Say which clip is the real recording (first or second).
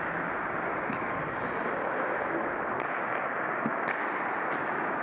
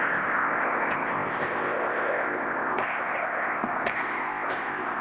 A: first